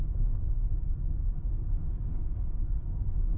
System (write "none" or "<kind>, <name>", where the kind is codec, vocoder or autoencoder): codec, DAC